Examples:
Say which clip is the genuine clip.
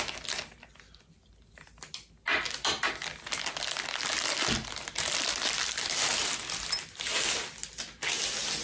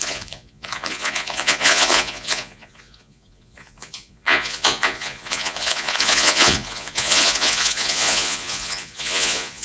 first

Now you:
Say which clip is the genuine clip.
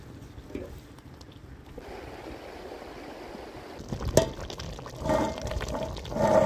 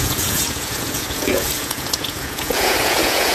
first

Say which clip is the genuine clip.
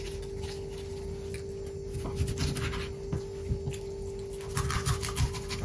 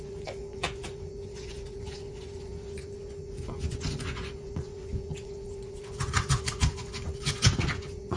first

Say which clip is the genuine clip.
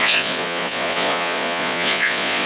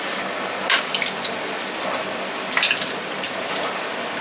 second